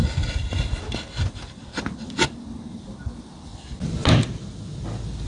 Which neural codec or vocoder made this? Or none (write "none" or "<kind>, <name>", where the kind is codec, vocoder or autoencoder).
none